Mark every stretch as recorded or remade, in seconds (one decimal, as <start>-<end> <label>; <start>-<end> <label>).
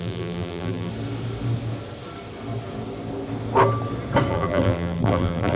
0.0-0.9 remade; 0.9-4.3 recorded; 4.3-5.6 remade